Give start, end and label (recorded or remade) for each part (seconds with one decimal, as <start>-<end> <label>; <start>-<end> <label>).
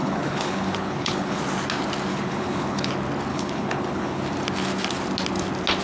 0.0-1.4 remade; 1.4-2.1 recorded; 2.1-2.9 remade; 2.9-3.3 recorded; 3.3-4.2 remade; 4.2-5.8 recorded